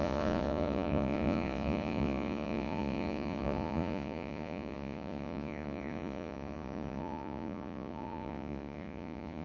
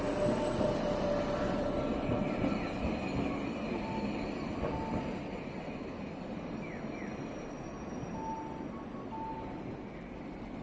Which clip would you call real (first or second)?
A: second